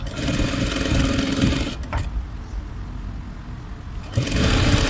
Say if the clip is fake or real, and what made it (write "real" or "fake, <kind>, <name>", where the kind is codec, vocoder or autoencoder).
real